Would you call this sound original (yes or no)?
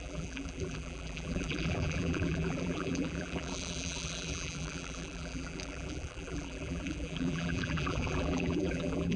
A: no